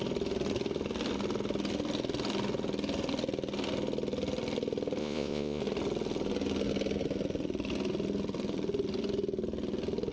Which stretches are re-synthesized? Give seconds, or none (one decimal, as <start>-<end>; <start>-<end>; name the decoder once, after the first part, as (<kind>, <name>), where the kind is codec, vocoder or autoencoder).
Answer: 5.0-5.6 (vocoder, Vocos)